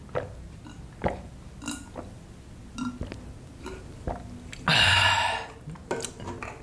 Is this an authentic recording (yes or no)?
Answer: yes